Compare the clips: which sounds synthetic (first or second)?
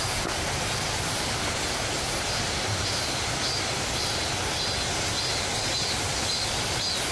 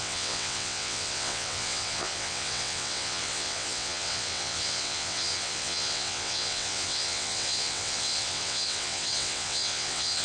second